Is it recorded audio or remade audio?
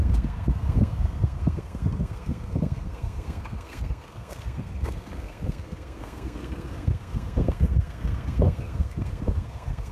remade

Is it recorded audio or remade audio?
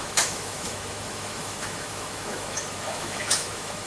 remade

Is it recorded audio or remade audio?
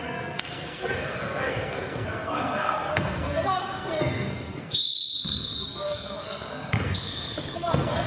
remade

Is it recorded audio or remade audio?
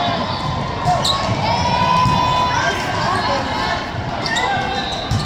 recorded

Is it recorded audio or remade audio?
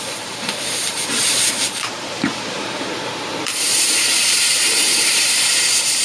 remade